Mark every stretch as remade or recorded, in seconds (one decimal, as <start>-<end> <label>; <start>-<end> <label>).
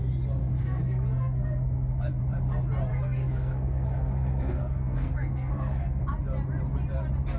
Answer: 0.0-0.4 recorded; 0.4-2.2 remade; 2.2-2.9 recorded; 2.9-6.0 remade; 6.0-7.4 recorded